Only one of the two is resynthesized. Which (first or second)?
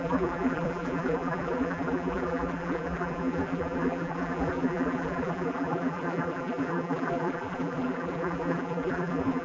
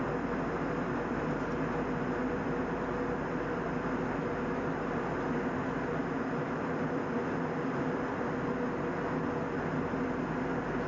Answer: first